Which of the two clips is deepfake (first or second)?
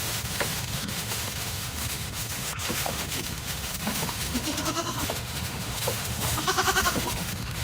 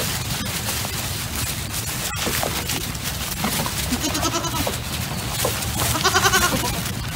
first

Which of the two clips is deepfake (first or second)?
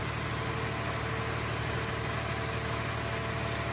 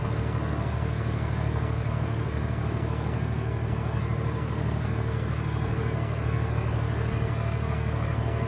second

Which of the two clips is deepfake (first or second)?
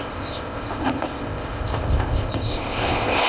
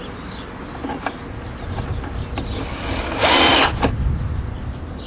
first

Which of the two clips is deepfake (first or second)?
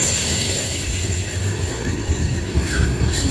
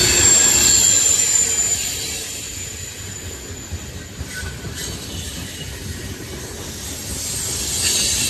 first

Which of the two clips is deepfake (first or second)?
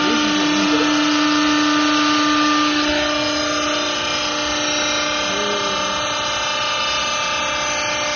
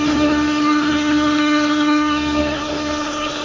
second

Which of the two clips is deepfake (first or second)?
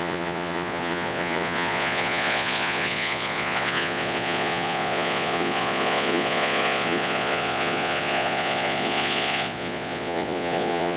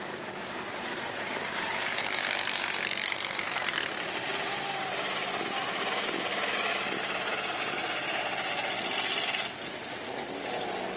first